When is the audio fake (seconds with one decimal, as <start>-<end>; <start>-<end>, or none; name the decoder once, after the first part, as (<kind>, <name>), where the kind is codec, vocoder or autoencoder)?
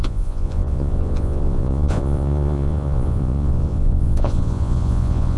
0.0-5.4 (vocoder, Vocos)